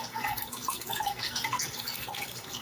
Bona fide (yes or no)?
no